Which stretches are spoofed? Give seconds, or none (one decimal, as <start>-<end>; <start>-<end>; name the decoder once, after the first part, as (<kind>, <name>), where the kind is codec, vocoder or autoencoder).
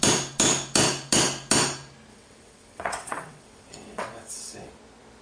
2.1-4.7 (vocoder, WaveNeXt)